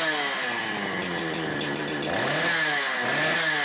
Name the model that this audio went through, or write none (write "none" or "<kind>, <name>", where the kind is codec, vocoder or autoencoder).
none